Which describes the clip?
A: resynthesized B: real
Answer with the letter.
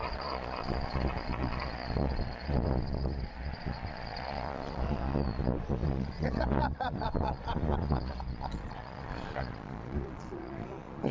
A